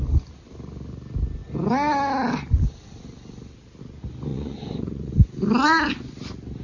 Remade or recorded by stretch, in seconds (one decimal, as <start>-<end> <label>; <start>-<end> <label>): 0.0-4.3 recorded; 4.3-5.1 remade; 5.1-6.6 recorded